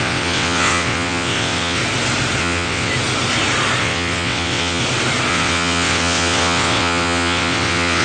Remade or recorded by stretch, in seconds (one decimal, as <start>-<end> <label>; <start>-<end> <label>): 0.0-1.8 remade; 1.8-2.4 recorded; 2.4-2.9 remade; 2.9-3.8 recorded; 3.8-4.8 remade; 4.8-5.3 recorded; 5.3-8.0 remade